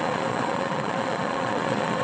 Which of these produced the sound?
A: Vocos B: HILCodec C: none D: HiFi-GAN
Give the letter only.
A